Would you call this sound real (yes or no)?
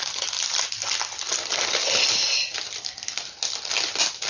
yes